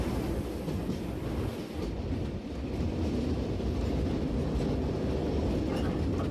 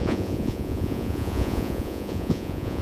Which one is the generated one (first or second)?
second